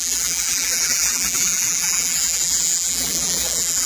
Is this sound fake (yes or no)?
yes